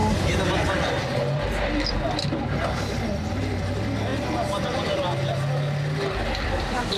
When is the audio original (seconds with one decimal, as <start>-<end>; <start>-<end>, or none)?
0.0-7.0